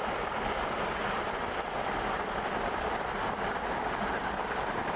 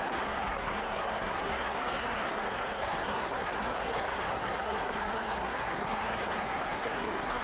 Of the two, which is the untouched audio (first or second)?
first